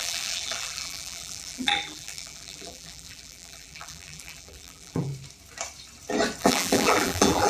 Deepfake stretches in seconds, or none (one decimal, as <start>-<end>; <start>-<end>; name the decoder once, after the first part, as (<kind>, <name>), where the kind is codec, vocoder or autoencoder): 0.0-5.1 (vocoder, BigVGAN v2); 6.4-7.5